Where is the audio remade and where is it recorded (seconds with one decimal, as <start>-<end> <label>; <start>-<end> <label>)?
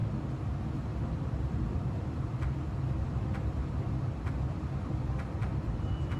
0.0-0.9 recorded; 0.9-6.2 remade